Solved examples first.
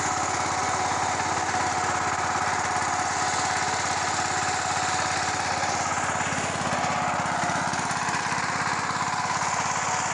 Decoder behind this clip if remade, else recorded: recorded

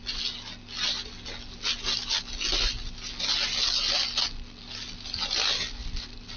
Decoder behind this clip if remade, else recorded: recorded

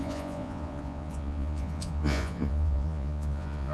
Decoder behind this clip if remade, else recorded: remade, vocoder, Vocos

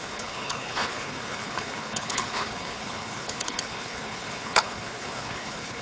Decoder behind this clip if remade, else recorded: remade, codec, HILCodec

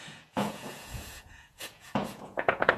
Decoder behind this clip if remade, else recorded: remade, vocoder, Vocos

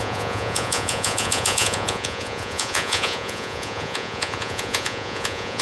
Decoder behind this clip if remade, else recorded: remade, vocoder, Vocos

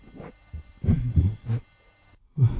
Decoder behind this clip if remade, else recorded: recorded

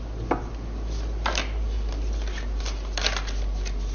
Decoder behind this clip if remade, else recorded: recorded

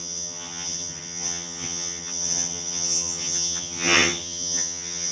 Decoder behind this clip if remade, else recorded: remade, vocoder, HiFi-GAN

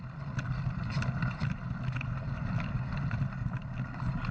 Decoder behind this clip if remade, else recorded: recorded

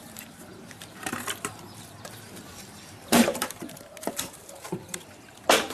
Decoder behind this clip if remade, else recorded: remade, vocoder, BigVGAN v2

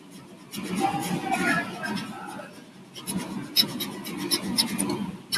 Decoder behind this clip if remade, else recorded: recorded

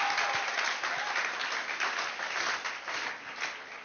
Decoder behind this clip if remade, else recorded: recorded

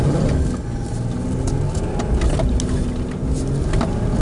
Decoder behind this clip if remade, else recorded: recorded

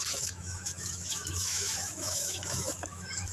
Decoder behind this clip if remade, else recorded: remade, autoencoder, DAC-VAE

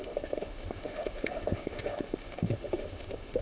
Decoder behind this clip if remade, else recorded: remade, autoencoder, DAC-VAE